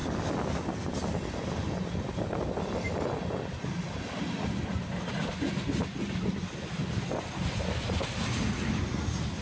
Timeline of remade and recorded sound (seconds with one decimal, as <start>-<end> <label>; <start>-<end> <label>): 0.0-9.4 recorded